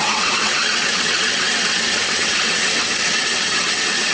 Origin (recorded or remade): remade